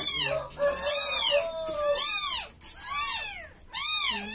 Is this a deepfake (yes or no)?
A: no